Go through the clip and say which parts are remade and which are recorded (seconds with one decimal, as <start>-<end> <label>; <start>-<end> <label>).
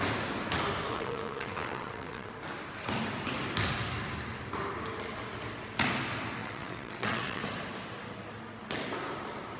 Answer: 0.0-0.9 recorded; 0.9-2.3 remade; 2.3-6.4 recorded; 6.4-7.4 remade; 7.4-9.6 recorded